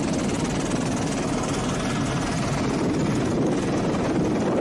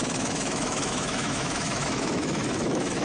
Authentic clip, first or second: first